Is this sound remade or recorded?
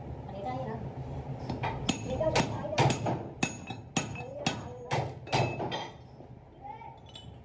recorded